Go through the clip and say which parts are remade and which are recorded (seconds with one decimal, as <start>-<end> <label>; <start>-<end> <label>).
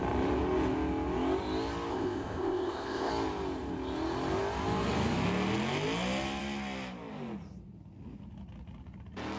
0.0-1.9 recorded; 1.9-3.1 remade; 3.1-9.4 recorded